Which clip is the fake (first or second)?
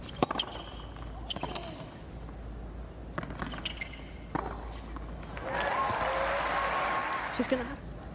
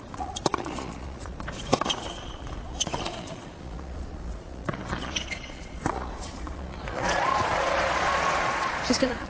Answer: second